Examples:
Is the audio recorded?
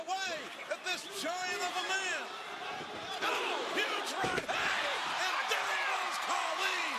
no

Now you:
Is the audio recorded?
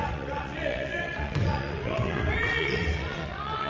no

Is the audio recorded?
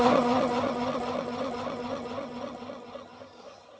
no